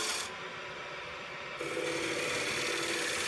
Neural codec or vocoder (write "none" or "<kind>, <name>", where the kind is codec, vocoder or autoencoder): none